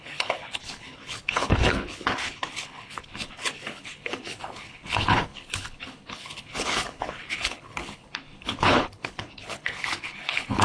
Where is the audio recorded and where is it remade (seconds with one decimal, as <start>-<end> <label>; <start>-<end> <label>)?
0.0-10.6 remade